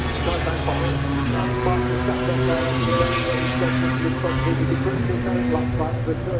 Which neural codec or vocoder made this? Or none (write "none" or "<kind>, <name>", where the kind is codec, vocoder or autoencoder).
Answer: none